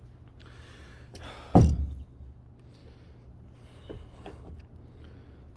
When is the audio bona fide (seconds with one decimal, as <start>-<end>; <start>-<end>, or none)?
0.0-5.6